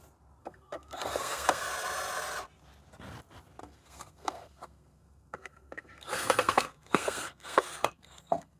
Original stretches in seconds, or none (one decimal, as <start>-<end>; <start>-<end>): 0.0-0.4; 1.7-3.6